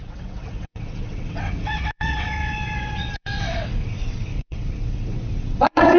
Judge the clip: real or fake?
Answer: fake